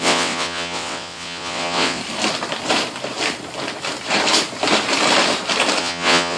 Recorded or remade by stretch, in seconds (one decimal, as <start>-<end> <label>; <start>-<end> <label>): 0.0-2.0 remade; 2.0-5.8 recorded; 5.8-6.4 remade